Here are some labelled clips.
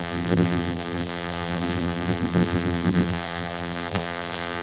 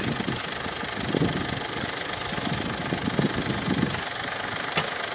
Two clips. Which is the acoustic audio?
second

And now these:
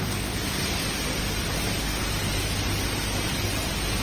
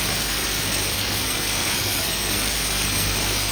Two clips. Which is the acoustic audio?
first